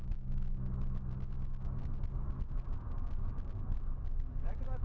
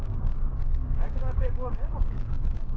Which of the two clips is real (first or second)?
first